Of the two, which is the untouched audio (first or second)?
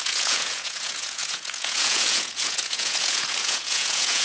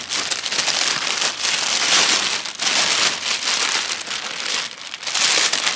second